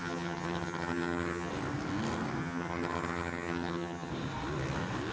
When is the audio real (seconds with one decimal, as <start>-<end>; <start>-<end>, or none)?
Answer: 1.5-2.4; 4.1-5.1